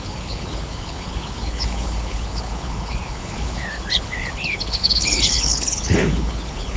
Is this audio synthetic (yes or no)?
yes